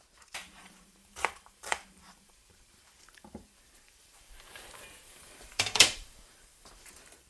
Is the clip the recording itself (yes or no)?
no